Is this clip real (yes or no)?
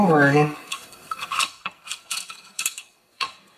no